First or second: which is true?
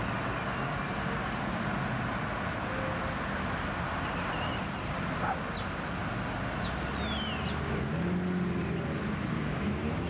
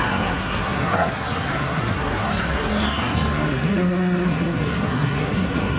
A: first